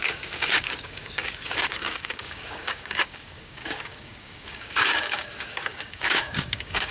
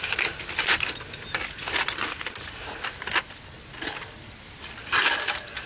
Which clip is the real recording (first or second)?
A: second